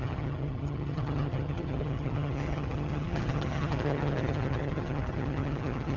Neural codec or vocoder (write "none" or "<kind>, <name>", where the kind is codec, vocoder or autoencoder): vocoder, HiFi-GAN